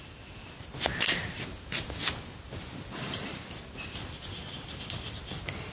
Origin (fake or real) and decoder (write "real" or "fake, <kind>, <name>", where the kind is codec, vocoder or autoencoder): real